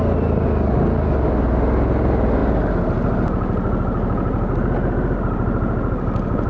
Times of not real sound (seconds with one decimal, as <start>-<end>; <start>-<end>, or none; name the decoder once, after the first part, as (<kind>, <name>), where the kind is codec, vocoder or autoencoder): none